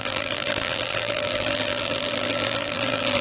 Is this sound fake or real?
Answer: fake